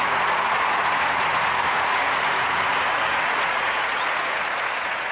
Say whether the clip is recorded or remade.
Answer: remade